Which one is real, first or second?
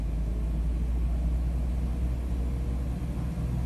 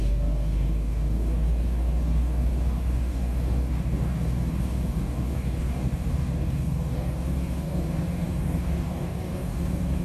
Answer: first